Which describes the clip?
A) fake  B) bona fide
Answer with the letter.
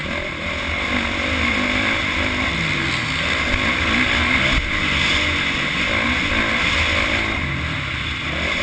B